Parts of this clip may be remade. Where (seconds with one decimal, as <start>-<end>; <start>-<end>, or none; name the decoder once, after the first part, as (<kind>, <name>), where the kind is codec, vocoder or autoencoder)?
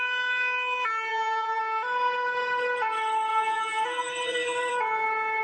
1.1-1.6 (vocoder, BigVGAN v2); 3.3-4.7